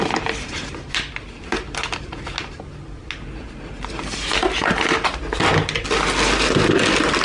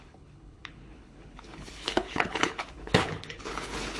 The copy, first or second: second